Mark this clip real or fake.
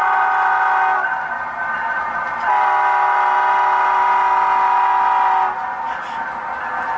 real